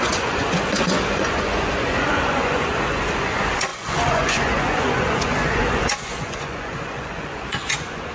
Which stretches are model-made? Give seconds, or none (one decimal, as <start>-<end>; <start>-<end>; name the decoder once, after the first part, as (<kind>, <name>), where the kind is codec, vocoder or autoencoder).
0.0-8.1 (vocoder, Vocos)